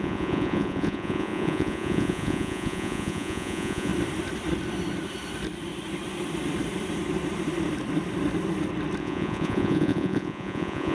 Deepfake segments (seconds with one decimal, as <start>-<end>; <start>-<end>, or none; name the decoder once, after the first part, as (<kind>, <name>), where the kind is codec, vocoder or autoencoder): 0.0-3.9 (vocoder, Vocos); 9.0-10.9